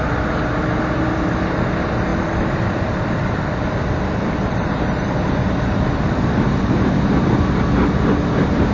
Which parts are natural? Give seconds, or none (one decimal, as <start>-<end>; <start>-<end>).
0.0-2.1; 6.6-8.7